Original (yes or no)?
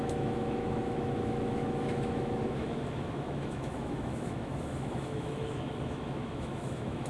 no